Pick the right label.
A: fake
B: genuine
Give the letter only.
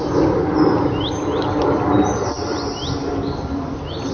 B